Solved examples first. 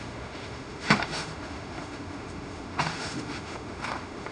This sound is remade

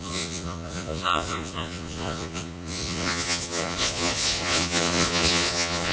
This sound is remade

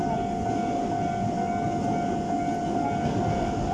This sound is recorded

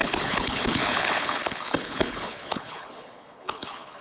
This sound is remade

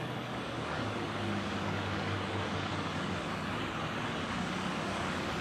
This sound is remade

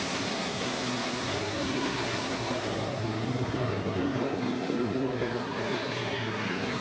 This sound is remade